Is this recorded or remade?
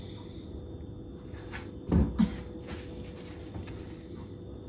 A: recorded